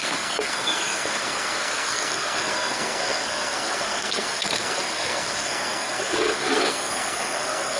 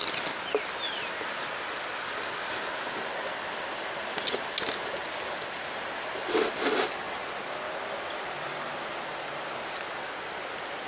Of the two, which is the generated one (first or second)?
first